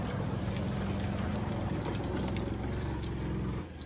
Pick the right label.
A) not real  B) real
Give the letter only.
B